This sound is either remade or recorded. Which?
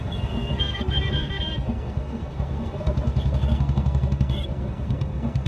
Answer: remade